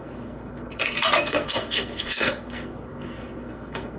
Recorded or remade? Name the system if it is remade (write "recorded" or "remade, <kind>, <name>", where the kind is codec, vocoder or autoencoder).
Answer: remade, codec, SNAC